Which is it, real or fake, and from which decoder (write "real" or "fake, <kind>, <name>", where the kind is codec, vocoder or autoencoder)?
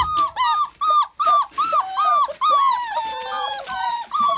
real